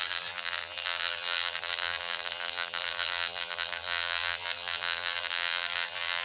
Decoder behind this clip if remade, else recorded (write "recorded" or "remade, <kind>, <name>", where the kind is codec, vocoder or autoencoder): remade, vocoder, BigVGAN v2